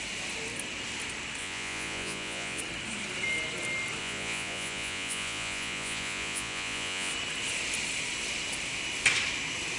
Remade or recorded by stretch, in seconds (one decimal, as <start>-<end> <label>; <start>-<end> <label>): 0.0-1.4 recorded; 1.4-2.6 remade; 2.6-4.0 recorded; 4.0-7.1 remade; 7.1-9.8 recorded